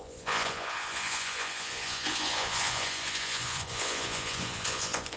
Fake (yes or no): yes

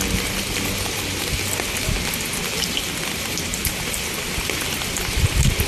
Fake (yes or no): no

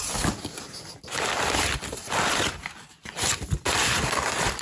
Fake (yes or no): no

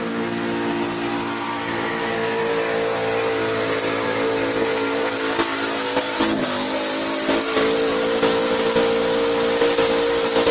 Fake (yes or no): no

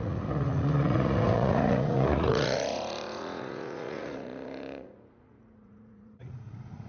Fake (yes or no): yes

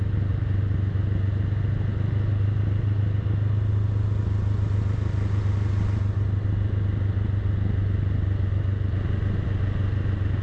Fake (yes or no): no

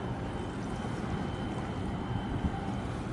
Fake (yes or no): no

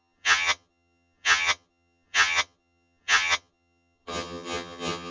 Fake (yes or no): yes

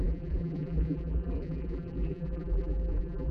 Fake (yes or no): yes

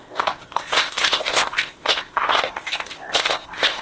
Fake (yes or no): yes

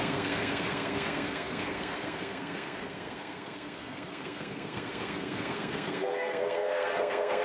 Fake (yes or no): yes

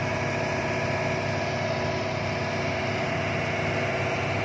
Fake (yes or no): no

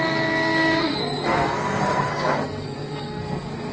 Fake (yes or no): yes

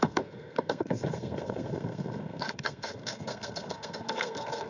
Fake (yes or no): yes